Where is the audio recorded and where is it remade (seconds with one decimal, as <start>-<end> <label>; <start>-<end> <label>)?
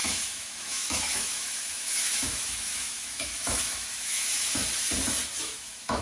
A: 0.0-4.6 remade; 4.6-5.4 recorded; 5.4-6.0 remade